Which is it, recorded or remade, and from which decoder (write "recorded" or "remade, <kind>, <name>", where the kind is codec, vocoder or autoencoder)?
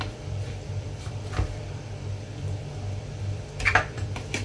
remade, vocoder, BigVGAN v2